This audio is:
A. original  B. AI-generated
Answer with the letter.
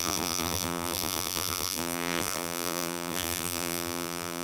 B